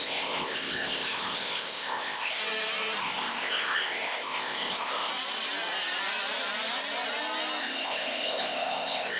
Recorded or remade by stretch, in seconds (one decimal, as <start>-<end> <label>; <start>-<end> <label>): 0.0-2.4 remade; 2.4-3.0 recorded; 3.0-5.1 remade; 5.1-7.6 recorded; 7.6-9.2 remade